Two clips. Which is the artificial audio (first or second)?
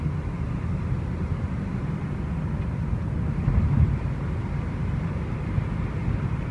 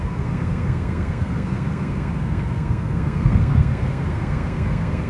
second